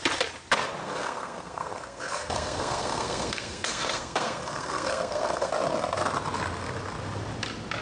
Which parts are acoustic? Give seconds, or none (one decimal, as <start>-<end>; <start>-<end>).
0.0-0.8; 5.5-7.8